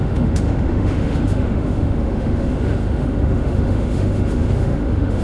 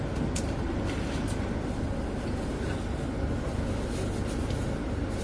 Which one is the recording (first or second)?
second